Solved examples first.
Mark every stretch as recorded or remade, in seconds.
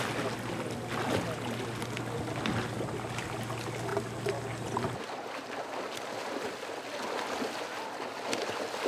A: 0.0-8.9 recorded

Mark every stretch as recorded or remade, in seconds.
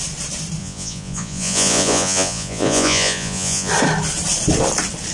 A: 0.0-0.6 recorded; 0.6-3.7 remade; 3.7-5.1 recorded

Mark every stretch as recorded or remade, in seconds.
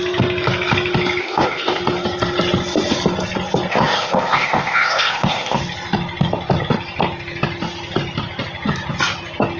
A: 0.0-1.2 recorded; 1.2-1.8 remade; 1.8-3.7 recorded; 3.7-5.6 remade; 5.6-9.6 recorded